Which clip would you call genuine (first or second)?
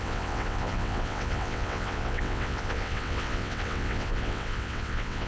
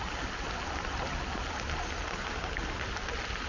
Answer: second